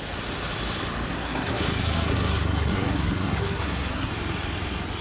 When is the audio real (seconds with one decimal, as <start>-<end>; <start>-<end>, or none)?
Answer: 0.0-1.1; 4.1-5.0